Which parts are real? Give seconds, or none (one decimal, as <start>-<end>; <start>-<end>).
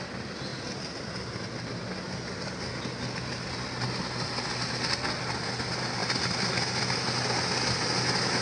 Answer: 0.0-8.4